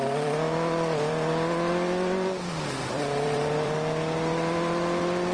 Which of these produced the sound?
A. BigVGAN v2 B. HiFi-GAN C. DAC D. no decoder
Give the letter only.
A